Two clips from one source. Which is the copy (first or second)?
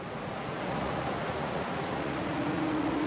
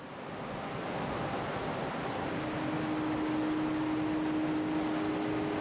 first